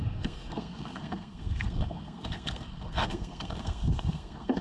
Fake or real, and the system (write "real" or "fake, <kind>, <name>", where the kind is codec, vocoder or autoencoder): fake, codec, SNAC